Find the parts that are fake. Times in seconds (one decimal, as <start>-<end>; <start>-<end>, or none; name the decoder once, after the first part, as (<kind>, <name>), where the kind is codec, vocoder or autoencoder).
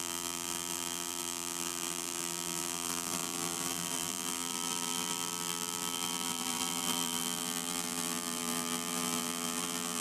0.0-10.0 (vocoder, BigVGAN v2)